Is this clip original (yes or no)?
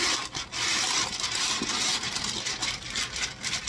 yes